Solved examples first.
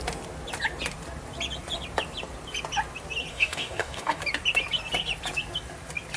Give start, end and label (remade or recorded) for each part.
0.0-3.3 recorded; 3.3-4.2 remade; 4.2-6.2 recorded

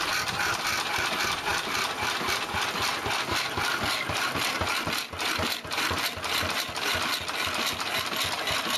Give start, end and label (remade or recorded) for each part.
0.0-8.8 recorded